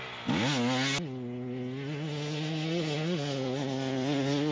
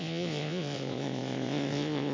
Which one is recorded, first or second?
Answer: first